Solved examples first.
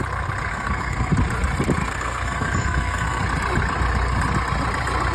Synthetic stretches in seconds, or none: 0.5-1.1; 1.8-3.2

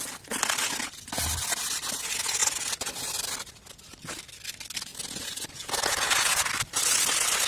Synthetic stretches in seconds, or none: 2.4-2.9; 4.9-6.5

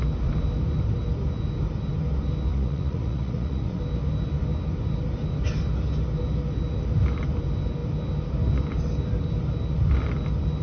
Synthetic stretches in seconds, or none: 2.5-3.8

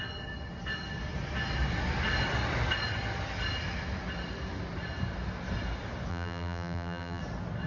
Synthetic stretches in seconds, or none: 6.1-7.2

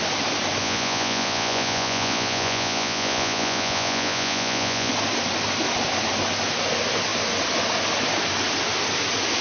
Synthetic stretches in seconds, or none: 0.6-4.9